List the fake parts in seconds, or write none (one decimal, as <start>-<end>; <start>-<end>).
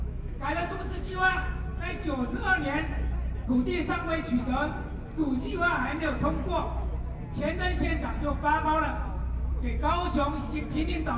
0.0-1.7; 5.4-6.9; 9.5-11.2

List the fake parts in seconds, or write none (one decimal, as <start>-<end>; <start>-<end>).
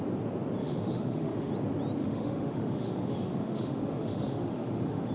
0.6-1.5; 2.0-5.1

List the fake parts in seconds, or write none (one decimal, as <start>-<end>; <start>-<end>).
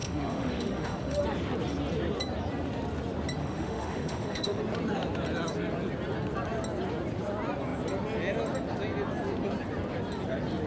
0.0-1.2; 3.4-4.6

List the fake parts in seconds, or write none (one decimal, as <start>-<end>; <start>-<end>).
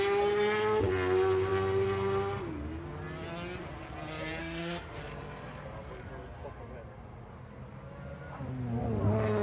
4.4-5.0